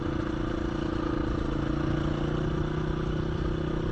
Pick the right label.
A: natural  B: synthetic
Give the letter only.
A